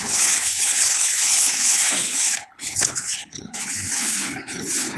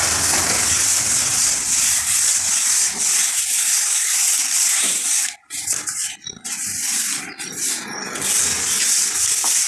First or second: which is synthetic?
first